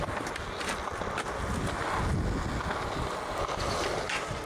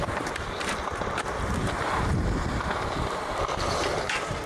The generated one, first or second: second